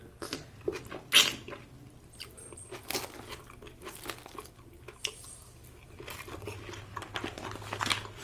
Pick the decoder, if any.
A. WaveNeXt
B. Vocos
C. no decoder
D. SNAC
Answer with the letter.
C